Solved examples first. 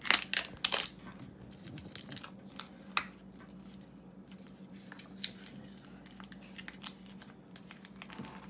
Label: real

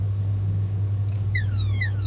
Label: fake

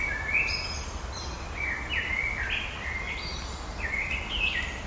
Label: real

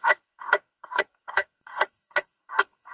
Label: fake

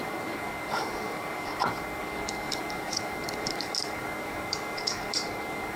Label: fake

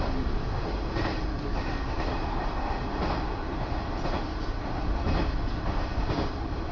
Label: real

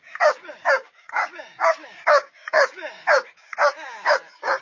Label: fake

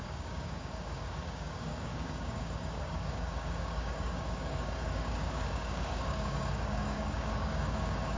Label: fake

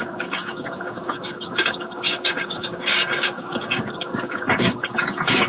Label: fake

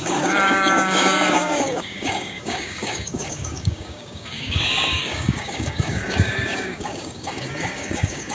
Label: fake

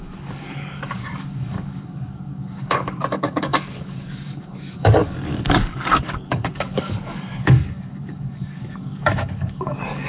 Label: fake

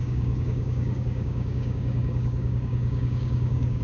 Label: fake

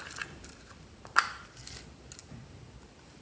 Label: real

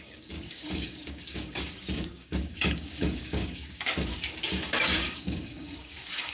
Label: fake